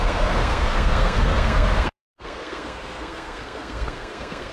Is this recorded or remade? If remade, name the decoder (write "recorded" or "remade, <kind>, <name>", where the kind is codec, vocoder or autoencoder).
remade, codec, SNAC